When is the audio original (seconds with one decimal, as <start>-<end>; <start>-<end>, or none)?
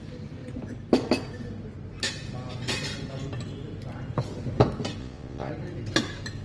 0.0-5.0; 5.5-6.4